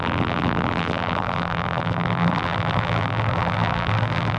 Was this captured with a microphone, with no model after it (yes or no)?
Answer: no